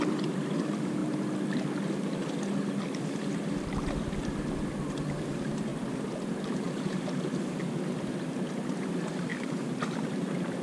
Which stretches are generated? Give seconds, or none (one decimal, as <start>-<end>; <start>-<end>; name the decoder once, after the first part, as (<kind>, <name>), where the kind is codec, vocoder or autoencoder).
0.0-1.0 (vocoder, BigVGAN v2); 2.8-10.6